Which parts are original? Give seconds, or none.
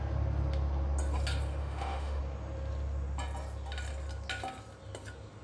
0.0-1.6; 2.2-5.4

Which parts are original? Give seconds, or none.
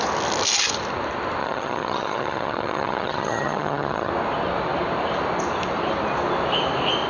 0.0-1.4; 4.1-7.1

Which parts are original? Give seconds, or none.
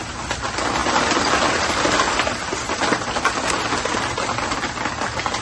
0.0-5.4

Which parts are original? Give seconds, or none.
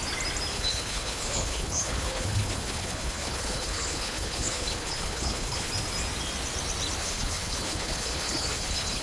0.0-0.5; 5.7-7.0